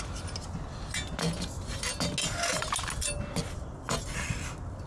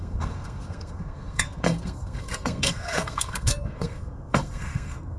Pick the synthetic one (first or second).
second